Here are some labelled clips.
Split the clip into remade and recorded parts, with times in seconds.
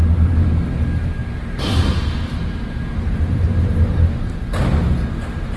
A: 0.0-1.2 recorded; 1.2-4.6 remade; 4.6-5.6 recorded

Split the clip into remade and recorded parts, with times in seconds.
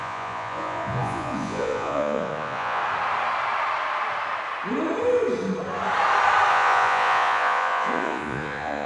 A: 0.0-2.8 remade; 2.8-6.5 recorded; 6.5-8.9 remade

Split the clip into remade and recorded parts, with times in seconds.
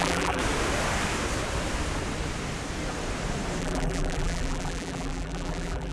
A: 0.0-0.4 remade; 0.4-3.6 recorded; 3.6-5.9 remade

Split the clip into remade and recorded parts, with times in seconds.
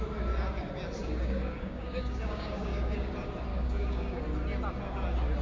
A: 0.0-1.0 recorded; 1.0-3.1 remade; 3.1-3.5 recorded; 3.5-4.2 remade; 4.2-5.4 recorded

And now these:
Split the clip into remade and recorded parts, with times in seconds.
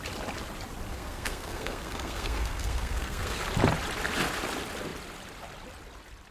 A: 0.0-0.9 recorded; 0.9-3.4 remade; 3.4-6.3 recorded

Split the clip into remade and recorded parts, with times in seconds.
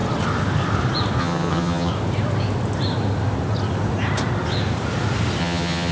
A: 0.0-1.2 recorded; 1.2-1.9 remade; 1.9-5.4 recorded; 5.4-5.9 remade